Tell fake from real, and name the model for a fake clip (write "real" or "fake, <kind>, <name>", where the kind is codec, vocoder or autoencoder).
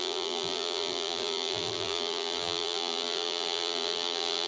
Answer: fake, vocoder, BigVGAN v2